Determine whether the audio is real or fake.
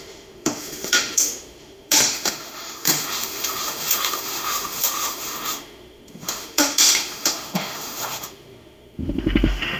fake